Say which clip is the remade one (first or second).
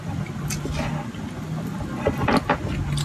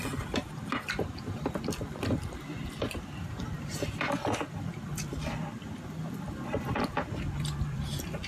second